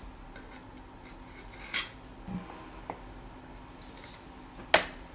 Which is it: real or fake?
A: real